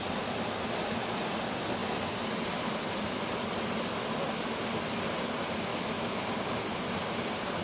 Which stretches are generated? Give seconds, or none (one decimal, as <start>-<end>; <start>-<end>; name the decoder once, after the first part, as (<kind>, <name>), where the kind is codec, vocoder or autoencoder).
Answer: 5.7-6.2 (autoencoder, DAC-VAE)